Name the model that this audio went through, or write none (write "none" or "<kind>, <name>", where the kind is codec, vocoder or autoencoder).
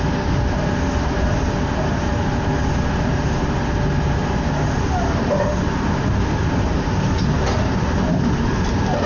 none